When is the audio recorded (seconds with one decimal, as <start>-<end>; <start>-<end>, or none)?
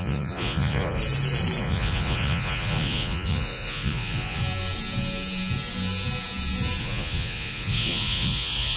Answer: 1.0-1.6; 4.4-6.8